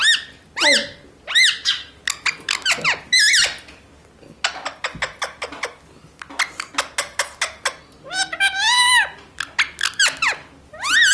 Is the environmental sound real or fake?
real